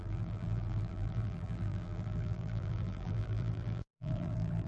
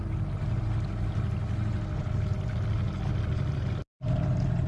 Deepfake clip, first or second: first